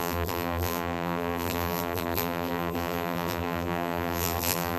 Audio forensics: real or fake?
fake